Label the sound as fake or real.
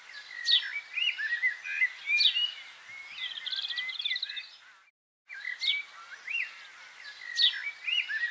real